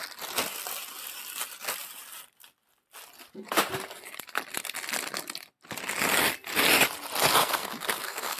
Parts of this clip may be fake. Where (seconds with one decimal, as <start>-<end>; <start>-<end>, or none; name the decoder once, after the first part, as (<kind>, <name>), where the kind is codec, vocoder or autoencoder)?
7.4-8.4 (codec, SNAC)